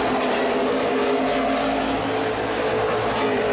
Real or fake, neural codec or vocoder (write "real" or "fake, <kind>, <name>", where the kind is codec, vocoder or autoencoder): real